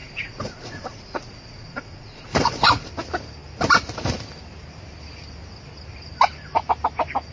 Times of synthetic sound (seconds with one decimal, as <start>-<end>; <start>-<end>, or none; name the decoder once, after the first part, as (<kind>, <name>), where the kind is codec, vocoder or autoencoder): 0.0-2.9 (vocoder, Vocos)